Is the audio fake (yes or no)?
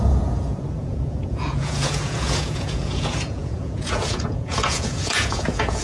yes